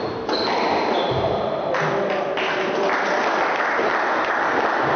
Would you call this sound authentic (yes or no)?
yes